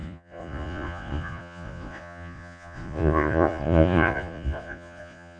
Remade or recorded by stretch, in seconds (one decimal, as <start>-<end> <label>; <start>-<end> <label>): 0.0-5.4 remade